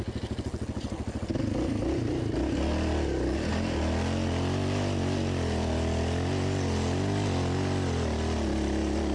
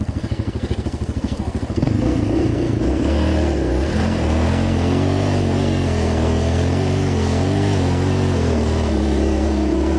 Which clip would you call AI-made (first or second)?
second